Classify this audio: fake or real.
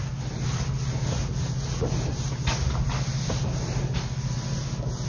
real